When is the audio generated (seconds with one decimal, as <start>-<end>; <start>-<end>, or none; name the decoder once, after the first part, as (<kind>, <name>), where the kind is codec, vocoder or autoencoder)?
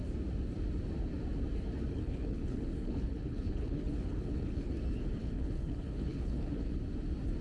1.9-4.7 (codec, HILCodec); 5.2-6.7